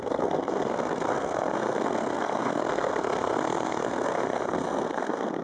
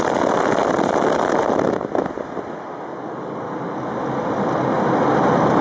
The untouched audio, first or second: second